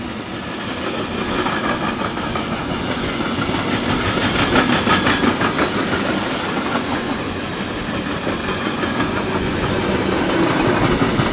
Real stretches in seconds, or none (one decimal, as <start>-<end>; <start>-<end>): 0.0-2.3; 3.4-6.7; 7.5-8.4; 9.8-11.3